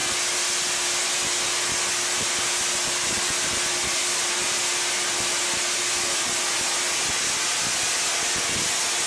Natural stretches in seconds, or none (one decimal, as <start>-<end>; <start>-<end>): 0.0-9.1